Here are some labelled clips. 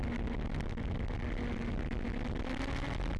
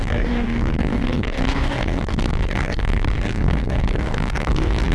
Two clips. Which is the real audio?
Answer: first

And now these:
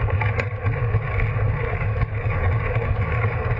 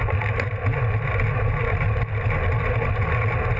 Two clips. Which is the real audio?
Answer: second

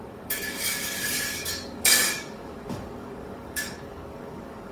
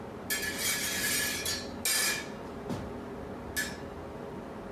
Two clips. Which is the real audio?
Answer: second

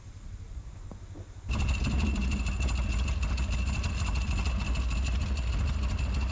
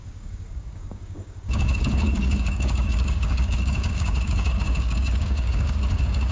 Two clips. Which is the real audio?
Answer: first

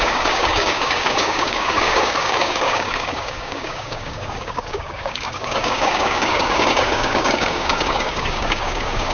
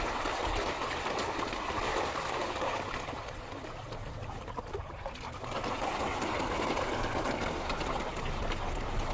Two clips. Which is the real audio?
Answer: second